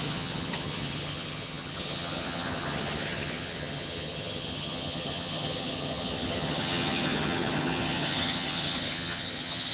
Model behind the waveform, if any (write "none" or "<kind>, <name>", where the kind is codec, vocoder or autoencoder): vocoder, HiFi-GAN